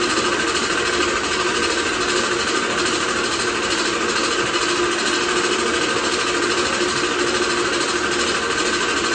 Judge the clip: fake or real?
real